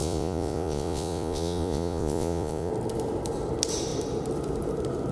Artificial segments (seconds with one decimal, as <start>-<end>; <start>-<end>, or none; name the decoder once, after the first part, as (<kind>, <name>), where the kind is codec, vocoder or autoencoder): 0.0-2.7 (vocoder, Vocos)